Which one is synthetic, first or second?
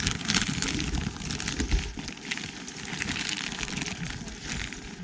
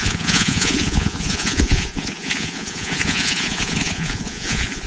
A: second